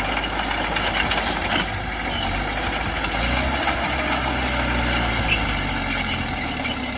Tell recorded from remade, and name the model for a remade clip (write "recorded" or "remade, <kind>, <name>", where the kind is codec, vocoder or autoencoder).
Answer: recorded